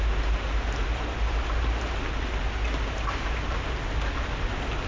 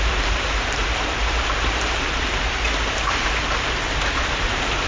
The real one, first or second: first